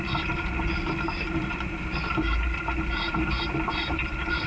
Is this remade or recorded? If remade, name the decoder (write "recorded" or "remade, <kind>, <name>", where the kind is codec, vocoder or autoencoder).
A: remade, vocoder, BigVGAN v2